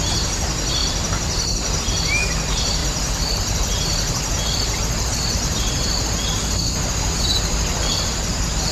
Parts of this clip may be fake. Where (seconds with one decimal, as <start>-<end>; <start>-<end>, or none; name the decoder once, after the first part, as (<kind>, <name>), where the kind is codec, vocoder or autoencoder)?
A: 0.8-1.8 (vocoder, BigVGAN v2); 2.8-3.4